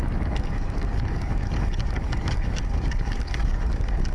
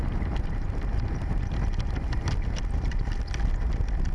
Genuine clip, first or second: second